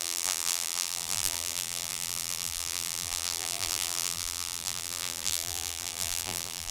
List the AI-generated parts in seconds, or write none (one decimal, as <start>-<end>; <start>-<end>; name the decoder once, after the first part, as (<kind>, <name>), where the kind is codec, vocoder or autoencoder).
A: 0.0-6.7 (vocoder, BigVGAN v2)